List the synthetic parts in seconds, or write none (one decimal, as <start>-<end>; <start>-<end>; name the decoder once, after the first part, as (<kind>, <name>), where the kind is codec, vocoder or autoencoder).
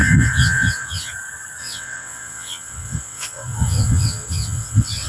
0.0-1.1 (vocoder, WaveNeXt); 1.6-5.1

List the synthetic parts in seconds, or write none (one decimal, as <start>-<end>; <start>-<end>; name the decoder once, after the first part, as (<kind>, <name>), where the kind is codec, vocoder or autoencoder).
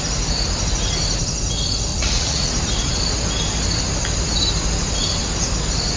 1.9-2.5 (vocoder, Vocos)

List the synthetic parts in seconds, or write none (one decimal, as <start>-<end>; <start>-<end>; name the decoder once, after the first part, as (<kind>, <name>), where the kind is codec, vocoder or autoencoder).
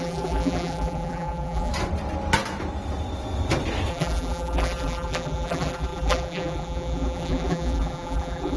0.0-1.7 (vocoder, BigVGAN v2); 3.9-8.6